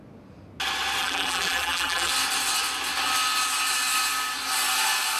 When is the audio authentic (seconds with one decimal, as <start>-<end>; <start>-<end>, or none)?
0.0-1.0; 2.1-5.2